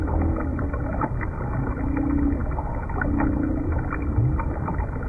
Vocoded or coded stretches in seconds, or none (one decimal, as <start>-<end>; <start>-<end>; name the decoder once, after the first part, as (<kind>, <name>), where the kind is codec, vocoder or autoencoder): 0.5-1.4 (vocoder, BigVGAN v2)